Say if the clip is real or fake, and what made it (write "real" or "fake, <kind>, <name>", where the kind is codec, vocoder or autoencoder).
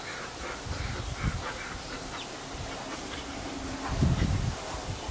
real